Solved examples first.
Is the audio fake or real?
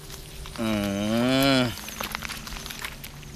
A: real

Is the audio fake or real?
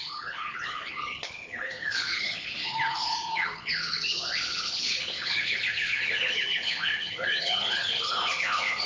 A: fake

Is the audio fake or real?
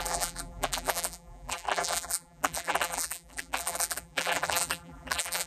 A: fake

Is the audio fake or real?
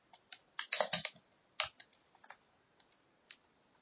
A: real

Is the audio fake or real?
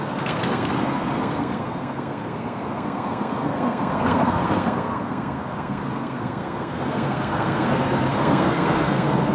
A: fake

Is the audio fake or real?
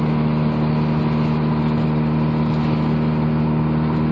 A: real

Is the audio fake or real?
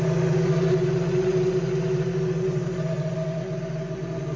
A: real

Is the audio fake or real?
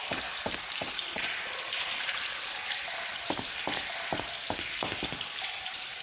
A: real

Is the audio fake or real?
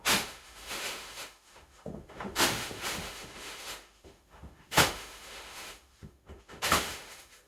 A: fake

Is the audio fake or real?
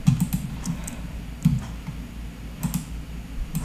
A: real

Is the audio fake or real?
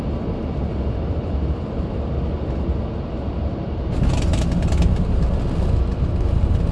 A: real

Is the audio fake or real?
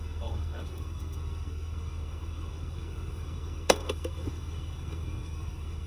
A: fake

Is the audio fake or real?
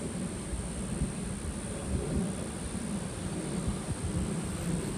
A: real